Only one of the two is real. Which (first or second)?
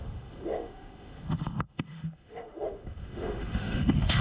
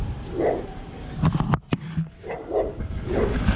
second